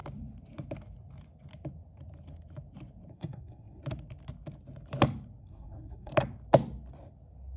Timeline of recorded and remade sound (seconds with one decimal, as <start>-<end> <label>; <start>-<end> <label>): 0.0-3.1 recorded; 3.1-3.8 remade; 3.8-5.4 recorded; 5.4-6.1 remade; 6.1-7.6 recorded